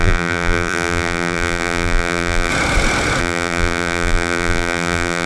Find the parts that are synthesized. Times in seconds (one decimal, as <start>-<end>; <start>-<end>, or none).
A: 0.0-2.5; 3.2-5.3